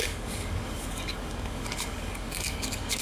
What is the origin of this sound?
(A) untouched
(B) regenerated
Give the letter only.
B